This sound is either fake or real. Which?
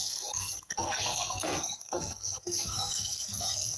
fake